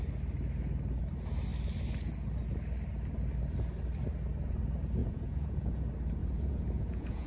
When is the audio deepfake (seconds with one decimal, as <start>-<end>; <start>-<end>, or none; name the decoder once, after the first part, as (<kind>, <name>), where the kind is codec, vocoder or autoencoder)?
5.0-5.8 (vocoder, Vocos); 6.2-7.3